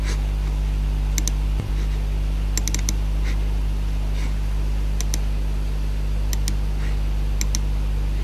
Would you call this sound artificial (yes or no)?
no